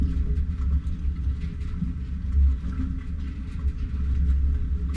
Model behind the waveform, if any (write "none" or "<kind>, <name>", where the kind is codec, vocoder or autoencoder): none